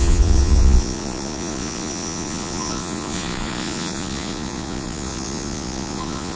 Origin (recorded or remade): remade